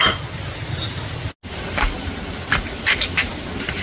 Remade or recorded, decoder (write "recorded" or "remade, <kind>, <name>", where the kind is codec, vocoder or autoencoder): recorded